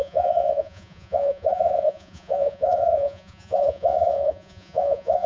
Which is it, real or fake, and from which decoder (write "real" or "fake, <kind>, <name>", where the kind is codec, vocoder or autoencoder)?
fake, vocoder, Vocos